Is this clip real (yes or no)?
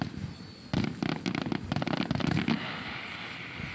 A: yes